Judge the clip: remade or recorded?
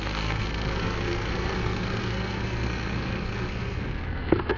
remade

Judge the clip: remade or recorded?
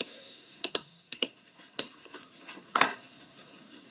remade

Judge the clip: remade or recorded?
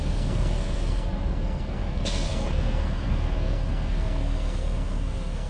remade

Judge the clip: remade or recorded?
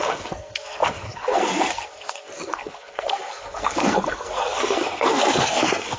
remade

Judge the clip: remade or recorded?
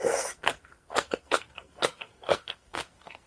remade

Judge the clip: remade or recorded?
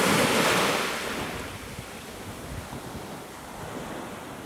recorded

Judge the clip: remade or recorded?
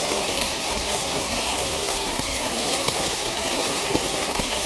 remade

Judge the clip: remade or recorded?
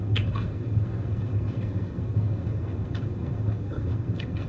remade